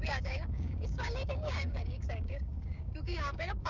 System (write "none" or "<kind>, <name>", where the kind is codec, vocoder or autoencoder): codec, DAC